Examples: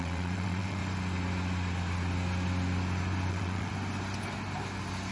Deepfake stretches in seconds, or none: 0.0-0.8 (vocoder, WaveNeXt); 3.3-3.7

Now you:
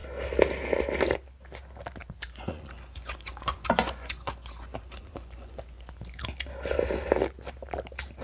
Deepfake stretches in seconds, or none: 2.0-6.2 (vocoder, Vocos)

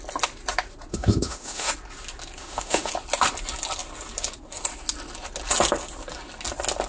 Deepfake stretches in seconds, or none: 0.9-1.7 (autoencoder, DAC-VAE); 2.4-2.9

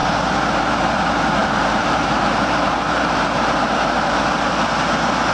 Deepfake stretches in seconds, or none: 1.4-4.5 (vocoder, BigVGAN v2)